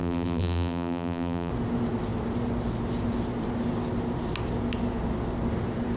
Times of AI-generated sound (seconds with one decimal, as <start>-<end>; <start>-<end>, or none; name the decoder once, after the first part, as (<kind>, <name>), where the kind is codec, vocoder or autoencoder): 0.0-1.5 (vocoder, BigVGAN v2)